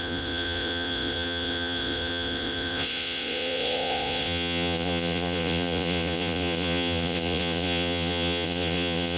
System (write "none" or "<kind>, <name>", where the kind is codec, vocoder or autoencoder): vocoder, Vocos